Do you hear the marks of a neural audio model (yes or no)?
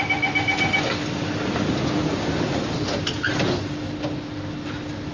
no